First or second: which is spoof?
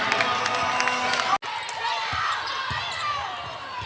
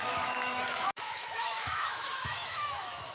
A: second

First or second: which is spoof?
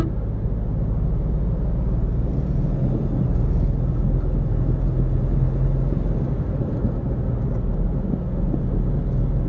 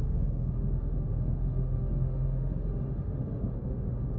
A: second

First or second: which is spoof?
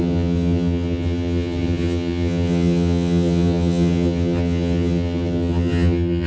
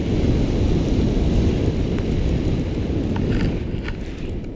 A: first